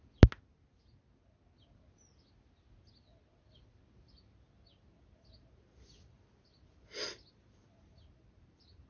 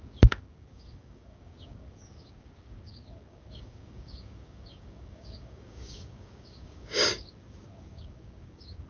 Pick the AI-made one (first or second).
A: second